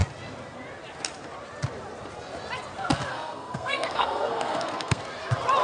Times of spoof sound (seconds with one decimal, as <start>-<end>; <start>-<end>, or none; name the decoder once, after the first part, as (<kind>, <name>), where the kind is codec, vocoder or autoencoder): 3.1-5.0 (codec, SNAC)